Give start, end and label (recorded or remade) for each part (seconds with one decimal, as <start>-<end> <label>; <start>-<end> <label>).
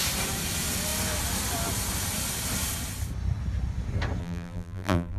0.0-4.2 recorded; 4.2-5.2 remade